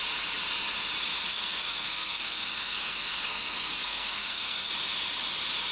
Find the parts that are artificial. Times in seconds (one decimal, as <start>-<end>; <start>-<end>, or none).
1.3-4.7